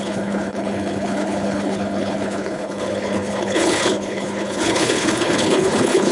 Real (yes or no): no